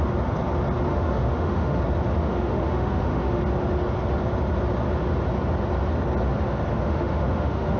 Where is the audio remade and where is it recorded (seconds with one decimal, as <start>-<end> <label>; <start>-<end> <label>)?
0.0-0.9 recorded; 0.9-1.8 remade; 1.8-2.2 recorded; 2.2-3.4 remade; 3.4-6.7 recorded; 6.7-7.8 remade